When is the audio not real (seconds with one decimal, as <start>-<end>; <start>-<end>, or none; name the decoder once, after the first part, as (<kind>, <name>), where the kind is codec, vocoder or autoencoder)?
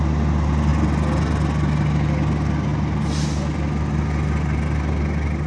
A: none